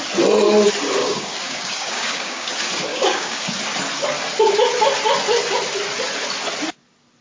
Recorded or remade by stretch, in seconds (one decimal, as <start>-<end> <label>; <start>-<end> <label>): 0.0-1.0 recorded; 1.0-2.5 remade; 2.5-2.9 recorded; 2.9-3.5 remade; 3.5-7.2 recorded